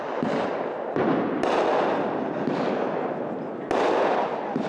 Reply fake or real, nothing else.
real